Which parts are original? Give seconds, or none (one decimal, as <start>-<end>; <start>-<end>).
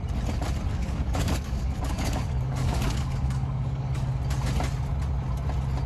0.0-0.7; 4.2-5.9